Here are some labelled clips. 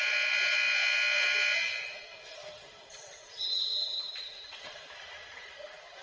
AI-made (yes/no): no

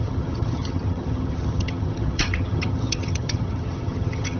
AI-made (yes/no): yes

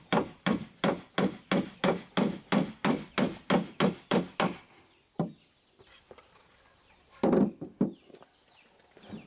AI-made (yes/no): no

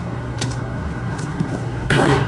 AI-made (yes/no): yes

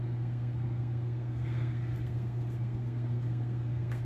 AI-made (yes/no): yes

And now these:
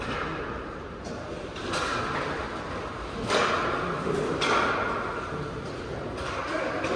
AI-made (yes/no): no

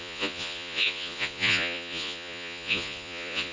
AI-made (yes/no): yes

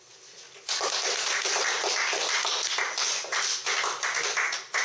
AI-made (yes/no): no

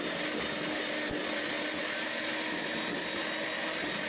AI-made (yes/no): no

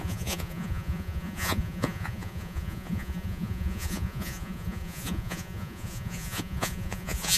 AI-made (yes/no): yes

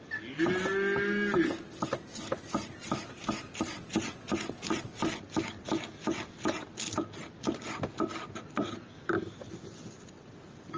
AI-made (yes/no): no